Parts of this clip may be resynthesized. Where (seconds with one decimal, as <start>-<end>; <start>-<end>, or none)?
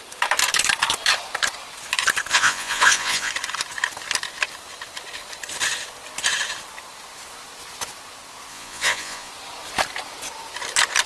2.3-3.3; 8.5-9.3